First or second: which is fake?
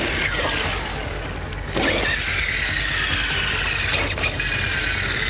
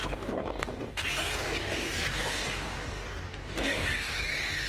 second